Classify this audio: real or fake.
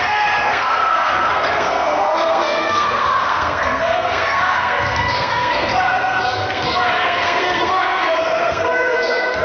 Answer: fake